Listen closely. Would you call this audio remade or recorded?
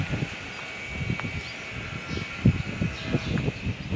recorded